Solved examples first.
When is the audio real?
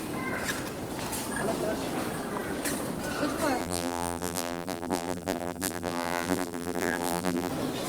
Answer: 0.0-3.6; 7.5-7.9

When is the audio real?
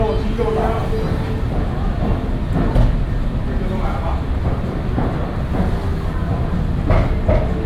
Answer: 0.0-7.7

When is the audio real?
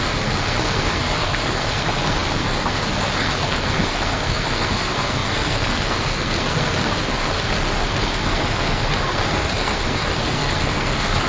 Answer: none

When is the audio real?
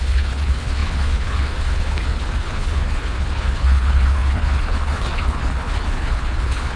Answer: none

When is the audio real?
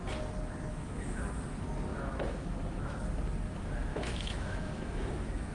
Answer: 0.0-0.7; 1.3-1.9; 3.0-3.9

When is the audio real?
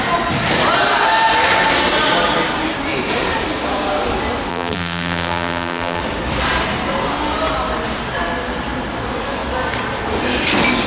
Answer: 0.0-4.5; 6.0-10.9